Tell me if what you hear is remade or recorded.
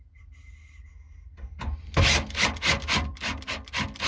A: recorded